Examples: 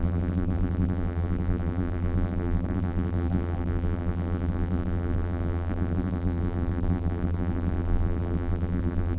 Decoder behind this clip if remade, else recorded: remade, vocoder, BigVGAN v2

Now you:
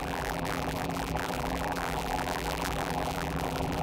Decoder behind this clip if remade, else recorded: remade, vocoder, BigVGAN v2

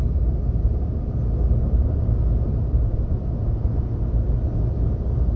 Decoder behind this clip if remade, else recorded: recorded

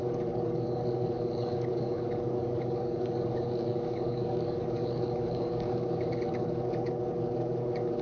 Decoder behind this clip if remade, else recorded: remade, codec, DAC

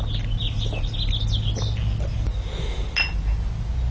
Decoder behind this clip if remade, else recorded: recorded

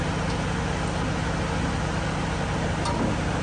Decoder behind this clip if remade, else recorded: recorded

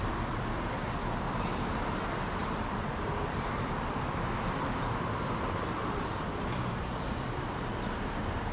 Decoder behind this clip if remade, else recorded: remade, vocoder, BigVGAN v2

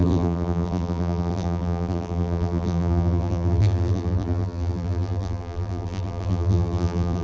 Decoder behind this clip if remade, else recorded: remade, vocoder, BigVGAN v2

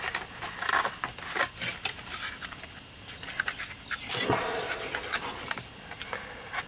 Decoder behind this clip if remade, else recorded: recorded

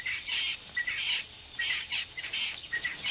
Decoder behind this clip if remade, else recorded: recorded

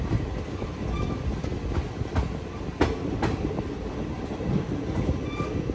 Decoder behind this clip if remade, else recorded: recorded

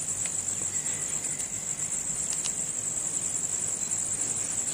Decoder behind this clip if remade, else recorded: recorded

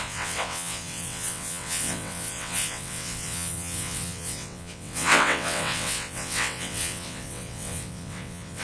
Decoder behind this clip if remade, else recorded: remade, vocoder, WaveNeXt